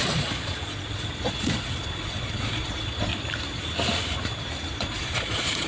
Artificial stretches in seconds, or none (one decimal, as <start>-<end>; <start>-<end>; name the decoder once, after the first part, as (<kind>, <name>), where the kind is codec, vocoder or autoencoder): 0.0-3.1 (vocoder, Vocos); 4.7-5.7